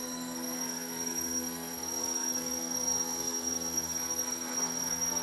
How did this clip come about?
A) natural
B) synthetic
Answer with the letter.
B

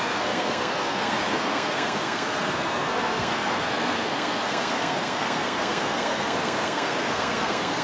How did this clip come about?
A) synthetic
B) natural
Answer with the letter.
A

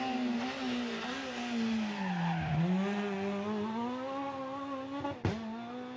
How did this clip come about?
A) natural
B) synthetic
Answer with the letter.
A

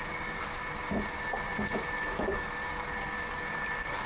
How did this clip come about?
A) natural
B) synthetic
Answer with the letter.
A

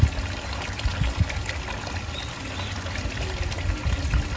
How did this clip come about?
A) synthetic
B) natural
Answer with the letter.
B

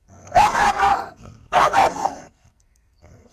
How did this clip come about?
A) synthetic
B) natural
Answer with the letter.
A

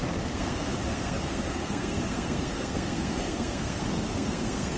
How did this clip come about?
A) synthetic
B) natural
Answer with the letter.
A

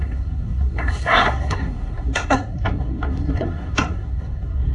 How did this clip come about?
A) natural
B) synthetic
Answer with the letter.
B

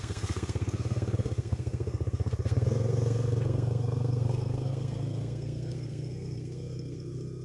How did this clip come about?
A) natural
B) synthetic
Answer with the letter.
B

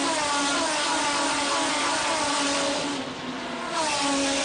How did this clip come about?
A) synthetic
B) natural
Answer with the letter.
B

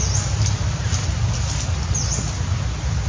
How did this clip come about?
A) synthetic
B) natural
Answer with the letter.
B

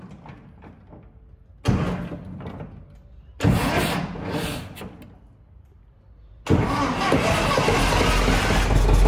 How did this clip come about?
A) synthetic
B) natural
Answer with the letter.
B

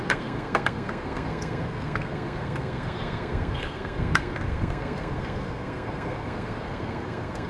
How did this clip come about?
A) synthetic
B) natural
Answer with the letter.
A